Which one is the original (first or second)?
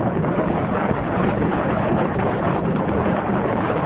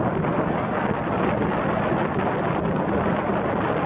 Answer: second